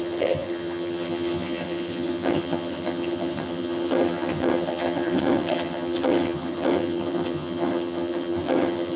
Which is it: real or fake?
fake